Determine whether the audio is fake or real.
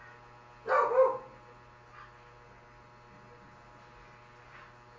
real